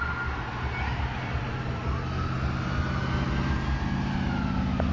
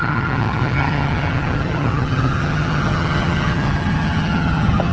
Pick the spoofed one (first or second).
second